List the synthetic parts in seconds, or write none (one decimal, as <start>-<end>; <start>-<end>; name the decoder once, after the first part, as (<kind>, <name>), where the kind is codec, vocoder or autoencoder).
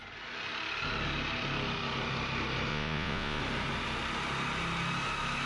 2.7-3.4 (vocoder, Vocos)